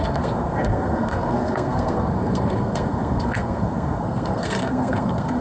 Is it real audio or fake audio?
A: fake